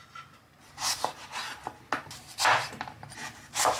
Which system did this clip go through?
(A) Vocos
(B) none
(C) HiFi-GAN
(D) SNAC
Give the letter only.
B